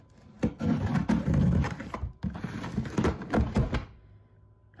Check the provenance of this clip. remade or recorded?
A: recorded